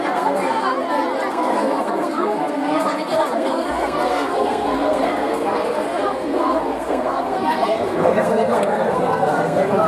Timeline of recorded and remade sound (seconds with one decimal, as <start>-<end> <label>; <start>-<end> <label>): 0.0-0.7 remade; 0.7-1.3 recorded; 1.3-9.9 remade